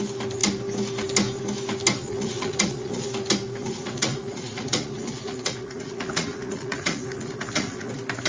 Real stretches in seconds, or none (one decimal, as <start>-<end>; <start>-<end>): 0.0-2.0; 3.1-3.6; 7.9-8.3